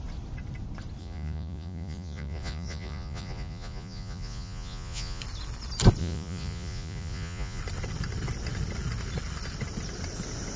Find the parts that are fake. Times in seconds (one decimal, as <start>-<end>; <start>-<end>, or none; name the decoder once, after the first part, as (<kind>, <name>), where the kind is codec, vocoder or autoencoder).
1.0-5.2 (vocoder, Vocos); 6.0-7.6